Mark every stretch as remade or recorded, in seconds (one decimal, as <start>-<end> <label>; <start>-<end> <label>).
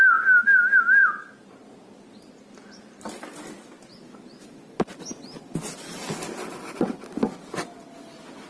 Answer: 0.0-8.5 recorded